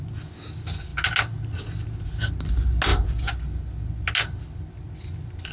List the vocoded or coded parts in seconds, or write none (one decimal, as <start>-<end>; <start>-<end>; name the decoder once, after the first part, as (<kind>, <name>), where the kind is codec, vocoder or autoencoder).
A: none